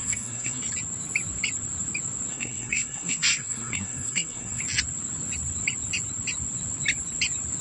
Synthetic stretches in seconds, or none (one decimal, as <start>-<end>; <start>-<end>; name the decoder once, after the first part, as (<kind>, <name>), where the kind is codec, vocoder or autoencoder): 0.0-0.6 (codec, SNAC); 2.3-4.6